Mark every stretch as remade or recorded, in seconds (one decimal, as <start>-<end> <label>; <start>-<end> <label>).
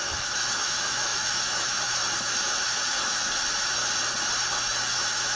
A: 0.0-3.8 remade; 3.8-4.6 recorded; 4.6-5.4 remade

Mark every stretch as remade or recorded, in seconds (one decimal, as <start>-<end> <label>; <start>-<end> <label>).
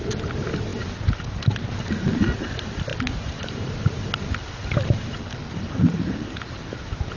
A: 0.0-2.9 recorded; 2.9-4.0 remade; 4.0-5.4 recorded; 5.4-7.2 remade